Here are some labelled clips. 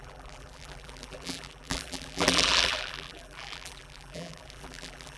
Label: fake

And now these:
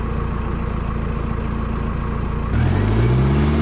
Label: real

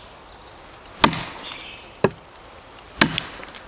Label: real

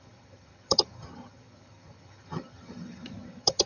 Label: fake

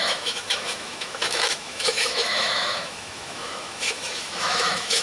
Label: fake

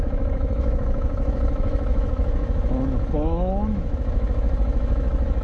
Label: fake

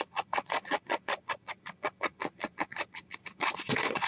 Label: fake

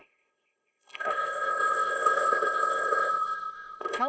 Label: fake